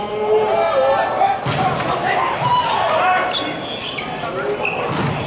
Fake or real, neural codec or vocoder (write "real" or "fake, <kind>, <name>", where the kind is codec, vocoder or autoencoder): real